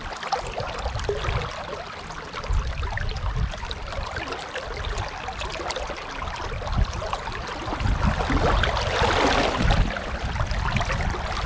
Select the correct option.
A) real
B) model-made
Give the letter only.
A